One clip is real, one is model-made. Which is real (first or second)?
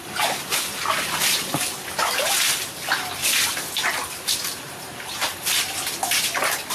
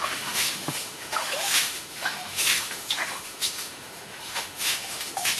first